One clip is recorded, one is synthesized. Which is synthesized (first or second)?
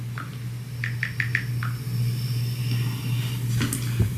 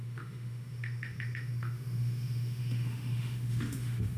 second